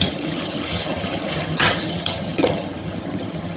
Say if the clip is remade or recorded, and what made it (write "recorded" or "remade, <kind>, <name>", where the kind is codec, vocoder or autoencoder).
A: remade, vocoder, HiFi-GAN